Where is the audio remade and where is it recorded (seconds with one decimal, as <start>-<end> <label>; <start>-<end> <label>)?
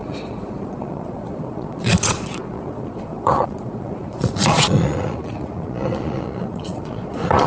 0.0-7.5 remade